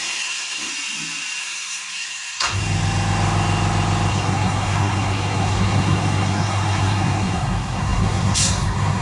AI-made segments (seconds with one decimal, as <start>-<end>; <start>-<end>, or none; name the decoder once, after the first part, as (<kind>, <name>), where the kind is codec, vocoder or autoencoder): 0.0-0.7 (codec, SNAC); 1.4-2.6; 4.1-9.0